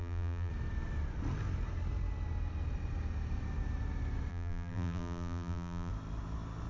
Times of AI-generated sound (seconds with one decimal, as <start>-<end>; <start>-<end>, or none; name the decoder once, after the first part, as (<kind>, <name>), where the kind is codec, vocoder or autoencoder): 0.0-0.5 (vocoder, BigVGAN v2); 4.3-5.9